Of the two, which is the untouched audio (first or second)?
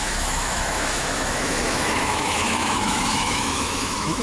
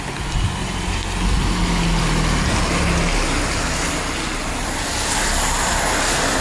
second